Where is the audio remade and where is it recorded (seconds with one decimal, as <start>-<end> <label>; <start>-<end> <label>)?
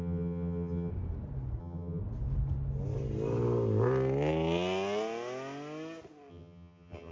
0.0-0.9 remade; 0.9-1.6 recorded; 1.6-2.0 remade; 2.0-6.3 recorded; 6.3-7.1 remade